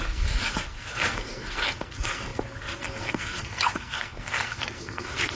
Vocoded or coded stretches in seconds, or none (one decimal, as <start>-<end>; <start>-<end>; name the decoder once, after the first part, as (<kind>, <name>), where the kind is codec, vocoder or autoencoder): 0.0-5.3 (codec, SNAC)